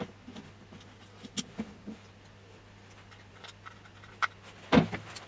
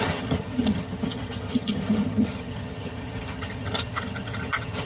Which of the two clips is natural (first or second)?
first